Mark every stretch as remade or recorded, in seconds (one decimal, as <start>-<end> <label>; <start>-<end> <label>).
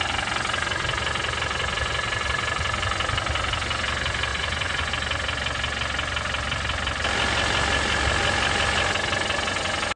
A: 0.0-4.3 recorded; 4.3-4.9 remade; 4.9-10.0 recorded